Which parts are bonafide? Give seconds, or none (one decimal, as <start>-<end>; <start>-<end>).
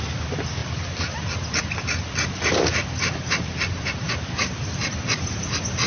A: 0.0-5.9